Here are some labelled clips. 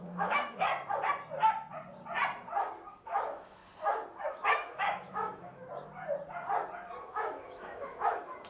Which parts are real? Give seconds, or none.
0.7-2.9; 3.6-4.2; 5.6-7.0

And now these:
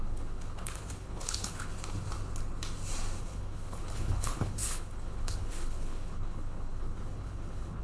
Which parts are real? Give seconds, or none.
1.7-3.2

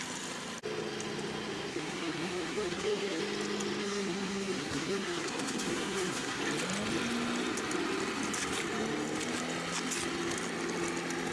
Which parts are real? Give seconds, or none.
0.0-1.7; 3.2-3.8; 6.4-11.3

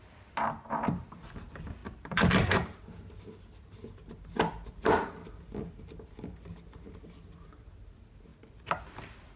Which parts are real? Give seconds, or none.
0.0-1.8; 2.8-8.3; 8.8-9.4

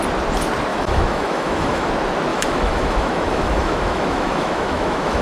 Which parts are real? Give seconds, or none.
0.0-0.7; 1.9-2.3

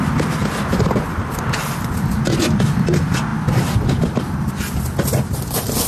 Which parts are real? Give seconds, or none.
0.0-5.9

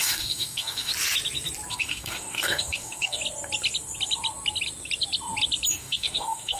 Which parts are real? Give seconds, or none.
0.9-1.7; 3.2-5.7